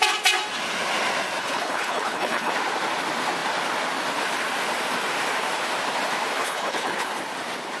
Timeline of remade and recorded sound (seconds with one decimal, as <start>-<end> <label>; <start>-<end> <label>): 0.0-1.4 recorded; 1.4-2.5 remade; 2.5-6.4 recorded; 6.4-7.1 remade; 7.1-7.8 recorded